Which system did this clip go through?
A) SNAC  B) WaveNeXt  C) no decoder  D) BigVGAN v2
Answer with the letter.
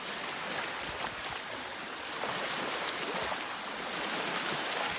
C